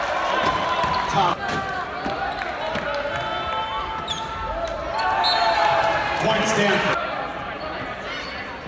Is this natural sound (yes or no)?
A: yes